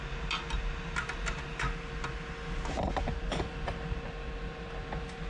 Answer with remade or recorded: recorded